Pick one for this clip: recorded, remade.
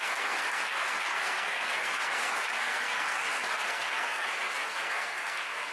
remade